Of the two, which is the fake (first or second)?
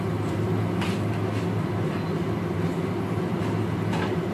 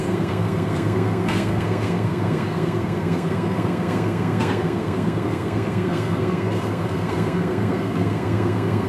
second